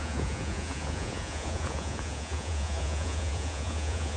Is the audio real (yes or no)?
no